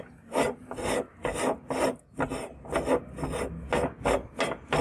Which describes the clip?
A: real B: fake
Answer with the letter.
A